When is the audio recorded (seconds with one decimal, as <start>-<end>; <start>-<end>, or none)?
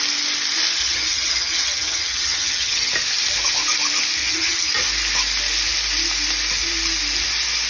0.0-0.8; 2.9-4.2; 4.7-7.7